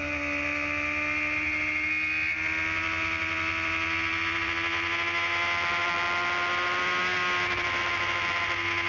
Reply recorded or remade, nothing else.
recorded